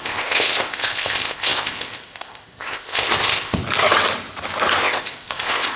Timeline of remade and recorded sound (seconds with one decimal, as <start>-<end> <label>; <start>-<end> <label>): 0.0-3.6 remade; 3.6-4.8 recorded; 4.8-5.8 remade